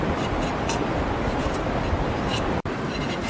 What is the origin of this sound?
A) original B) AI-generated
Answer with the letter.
B